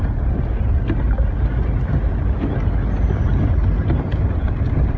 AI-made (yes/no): no